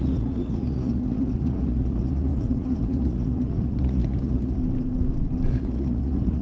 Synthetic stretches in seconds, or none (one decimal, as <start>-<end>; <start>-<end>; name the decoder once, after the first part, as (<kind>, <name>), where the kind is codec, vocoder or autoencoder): 0.0-4.6 (vocoder, Vocos); 5.5-6.4